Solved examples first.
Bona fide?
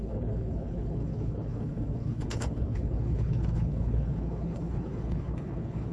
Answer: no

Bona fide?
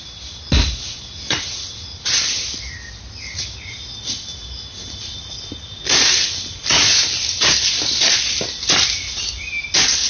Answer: yes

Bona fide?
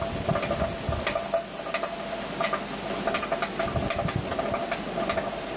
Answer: yes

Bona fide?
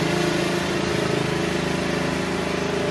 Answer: yes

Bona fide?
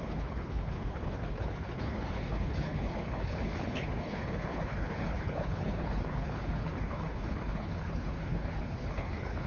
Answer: no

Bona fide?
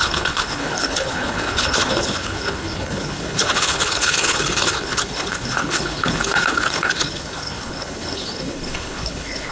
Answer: no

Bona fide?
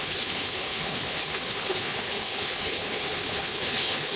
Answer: no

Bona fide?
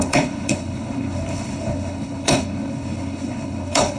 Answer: no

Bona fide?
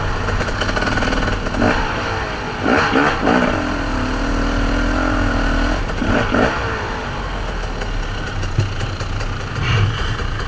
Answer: yes